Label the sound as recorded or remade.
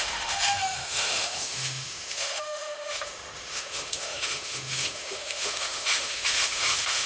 remade